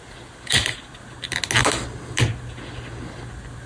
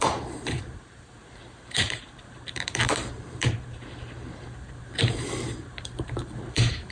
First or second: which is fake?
second